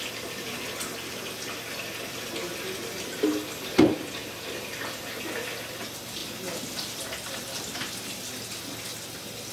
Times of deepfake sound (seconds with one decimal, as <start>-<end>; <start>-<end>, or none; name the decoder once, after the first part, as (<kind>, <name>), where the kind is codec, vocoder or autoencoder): none